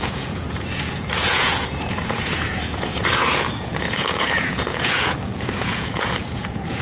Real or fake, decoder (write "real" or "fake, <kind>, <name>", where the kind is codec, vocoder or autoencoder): fake, vocoder, Vocos